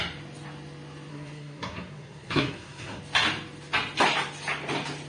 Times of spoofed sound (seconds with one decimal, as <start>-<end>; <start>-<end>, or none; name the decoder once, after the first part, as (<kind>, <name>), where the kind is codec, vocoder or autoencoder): 1.1-3.0 (codec, SNAC)